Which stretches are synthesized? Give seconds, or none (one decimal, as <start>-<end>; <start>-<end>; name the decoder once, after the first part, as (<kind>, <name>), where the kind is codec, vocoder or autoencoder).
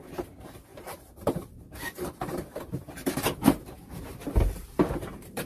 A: 0.0-5.5 (vocoder, BigVGAN v2)